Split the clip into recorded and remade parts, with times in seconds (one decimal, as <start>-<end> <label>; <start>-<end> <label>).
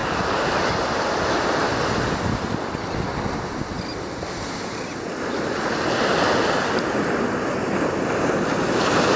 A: 0.0-1.2 remade; 1.2-9.2 recorded